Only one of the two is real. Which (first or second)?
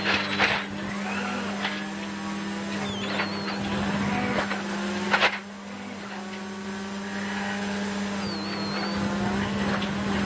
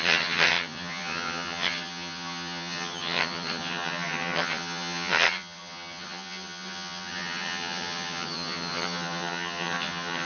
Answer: first